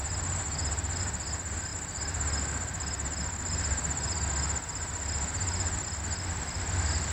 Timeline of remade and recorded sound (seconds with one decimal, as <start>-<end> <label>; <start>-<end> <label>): 0.0-7.1 recorded